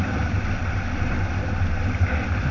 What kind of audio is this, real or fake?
real